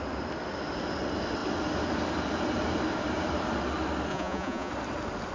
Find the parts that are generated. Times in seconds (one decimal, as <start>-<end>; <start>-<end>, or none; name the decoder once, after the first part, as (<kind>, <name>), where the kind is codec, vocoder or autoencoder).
4.1-4.7 (vocoder, Vocos)